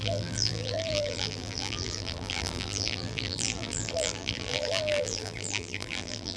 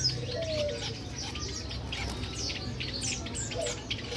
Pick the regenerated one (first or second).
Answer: first